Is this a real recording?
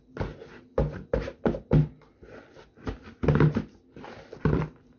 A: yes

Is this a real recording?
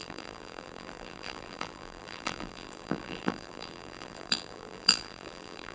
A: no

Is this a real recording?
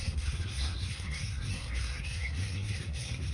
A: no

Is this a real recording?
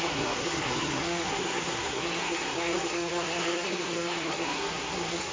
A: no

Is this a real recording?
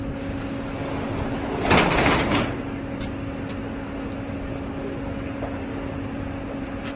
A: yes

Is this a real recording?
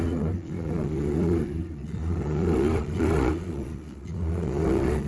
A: no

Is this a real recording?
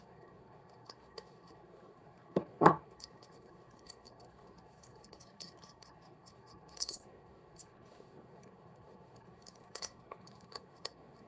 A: no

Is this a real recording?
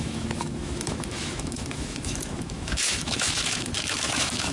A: no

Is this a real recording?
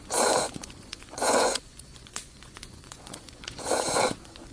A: no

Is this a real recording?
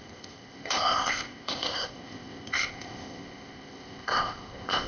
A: no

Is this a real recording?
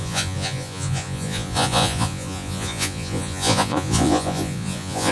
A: no